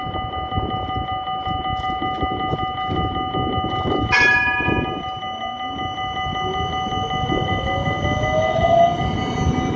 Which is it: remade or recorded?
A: recorded